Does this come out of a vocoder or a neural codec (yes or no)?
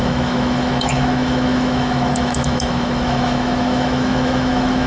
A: yes